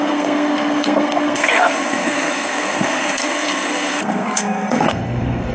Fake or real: fake